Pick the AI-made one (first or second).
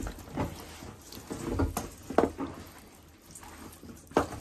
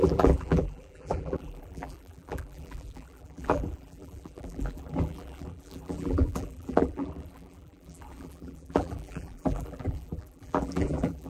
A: second